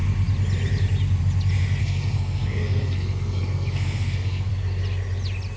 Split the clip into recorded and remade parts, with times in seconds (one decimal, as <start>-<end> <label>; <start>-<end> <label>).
0.0-1.8 recorded; 1.8-4.5 remade; 4.5-5.6 recorded